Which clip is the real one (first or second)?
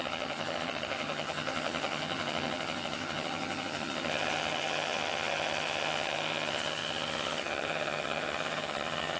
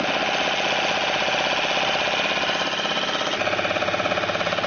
second